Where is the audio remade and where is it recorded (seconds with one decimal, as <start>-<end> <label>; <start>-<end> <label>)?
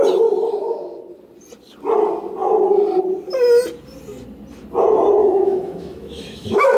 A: 0.0-5.2 recorded; 5.2-6.8 remade